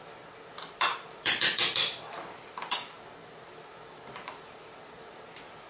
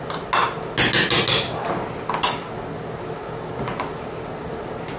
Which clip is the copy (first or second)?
first